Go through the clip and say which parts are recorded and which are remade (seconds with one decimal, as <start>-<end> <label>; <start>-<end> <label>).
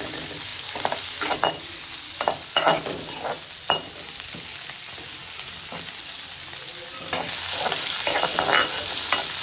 0.0-9.4 recorded